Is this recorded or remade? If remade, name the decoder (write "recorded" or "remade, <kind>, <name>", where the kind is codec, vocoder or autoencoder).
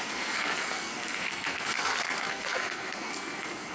remade, codec, SNAC